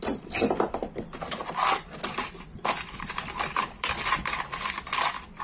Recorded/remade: remade